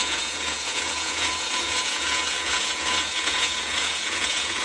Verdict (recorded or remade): remade